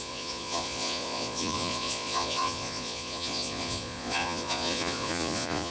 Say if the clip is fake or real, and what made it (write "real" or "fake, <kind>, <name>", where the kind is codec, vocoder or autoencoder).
fake, vocoder, Vocos